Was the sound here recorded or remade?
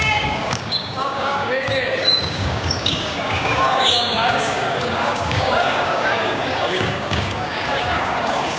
remade